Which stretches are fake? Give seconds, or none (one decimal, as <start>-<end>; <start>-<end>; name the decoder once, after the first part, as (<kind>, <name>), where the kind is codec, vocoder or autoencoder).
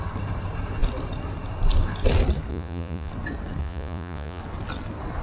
2.5-3.1 (vocoder, Vocos); 3.6-4.4